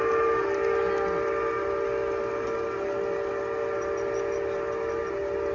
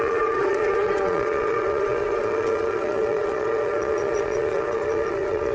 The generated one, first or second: second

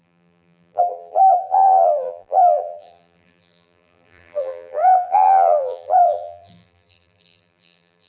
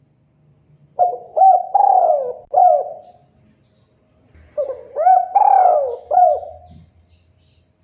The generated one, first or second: first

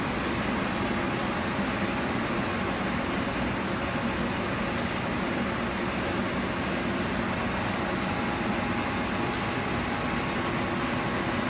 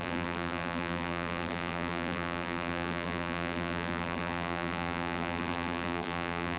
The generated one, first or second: second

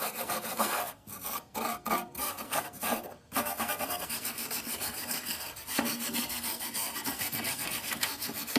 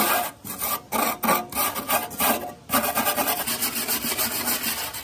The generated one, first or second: first